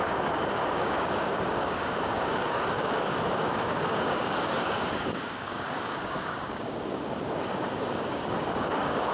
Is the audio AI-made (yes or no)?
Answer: yes